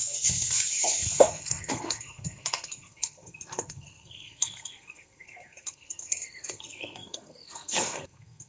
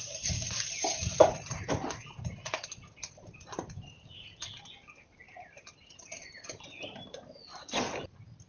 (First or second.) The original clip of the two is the second